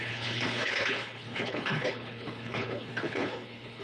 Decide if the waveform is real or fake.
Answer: fake